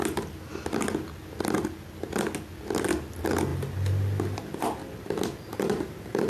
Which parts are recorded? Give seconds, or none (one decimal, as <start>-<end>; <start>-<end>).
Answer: 0.0-5.5